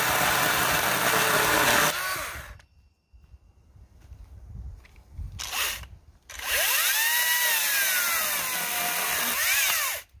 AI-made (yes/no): no